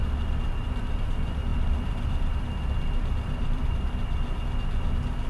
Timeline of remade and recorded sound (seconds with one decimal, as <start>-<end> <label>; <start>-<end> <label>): 0.0-1.5 recorded; 1.5-3.7 remade; 3.7-5.3 recorded